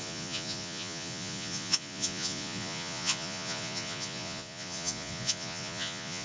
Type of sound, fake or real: fake